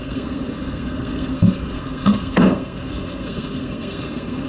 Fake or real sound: fake